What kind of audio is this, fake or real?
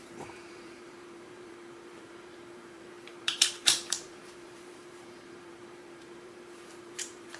fake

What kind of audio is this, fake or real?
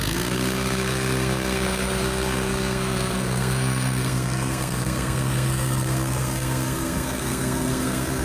fake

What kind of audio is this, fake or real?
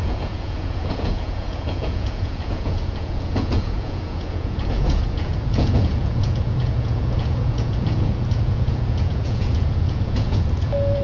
fake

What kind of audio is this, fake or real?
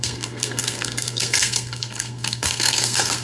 fake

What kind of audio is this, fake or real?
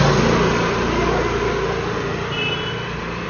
real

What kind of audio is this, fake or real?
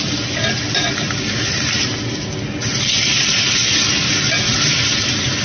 real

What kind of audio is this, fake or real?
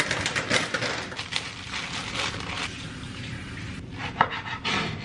real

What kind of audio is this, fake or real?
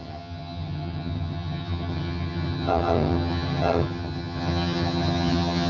fake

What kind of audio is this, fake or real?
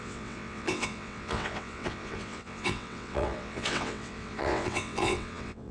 fake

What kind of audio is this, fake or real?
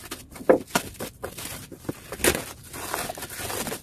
real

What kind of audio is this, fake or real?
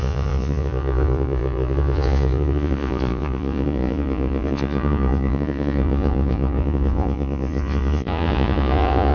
fake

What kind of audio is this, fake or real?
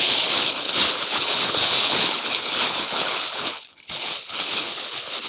fake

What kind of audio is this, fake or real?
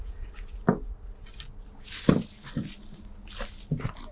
real